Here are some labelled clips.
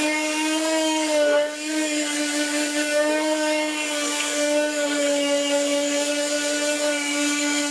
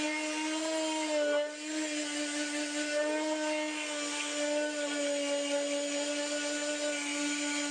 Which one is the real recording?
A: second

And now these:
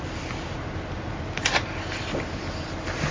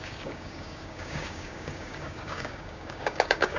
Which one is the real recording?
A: first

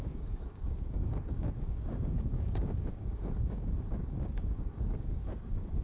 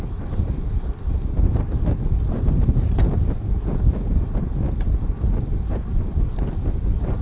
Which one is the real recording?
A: second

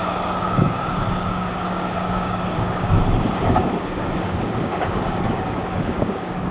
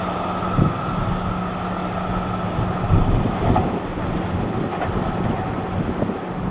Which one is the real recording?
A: second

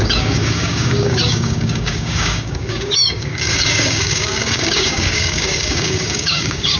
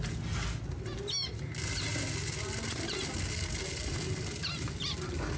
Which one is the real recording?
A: second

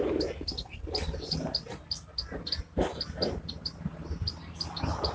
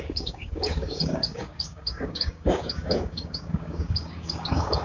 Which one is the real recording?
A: first